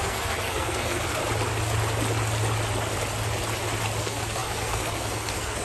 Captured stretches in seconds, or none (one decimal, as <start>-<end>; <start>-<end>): 1.2-4.0